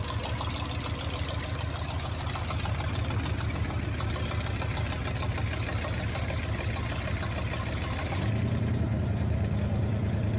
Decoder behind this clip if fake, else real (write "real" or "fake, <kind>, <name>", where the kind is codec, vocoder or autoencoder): real